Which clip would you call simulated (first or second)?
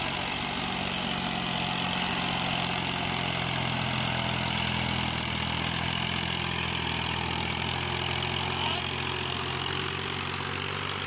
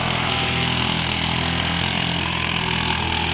second